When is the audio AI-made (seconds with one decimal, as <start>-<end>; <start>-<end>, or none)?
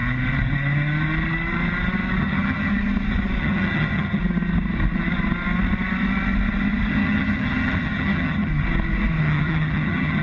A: 2.2-2.7; 3.4-4.2; 6.9-8.5; 9.2-10.2